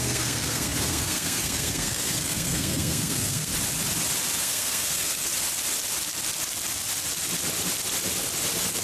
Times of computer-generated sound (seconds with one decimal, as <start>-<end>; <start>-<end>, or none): 0.0-3.5; 4.4-5.3